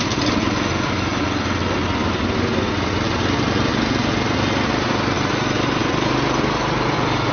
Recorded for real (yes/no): yes